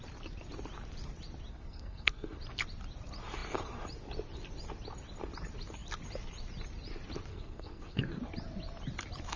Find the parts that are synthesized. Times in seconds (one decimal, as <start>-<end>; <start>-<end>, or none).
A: 1.5-2.4; 7.3-8.2